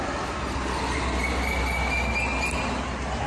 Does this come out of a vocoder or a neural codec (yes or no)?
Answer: no